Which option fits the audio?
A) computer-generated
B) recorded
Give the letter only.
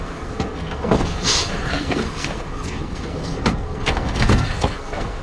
A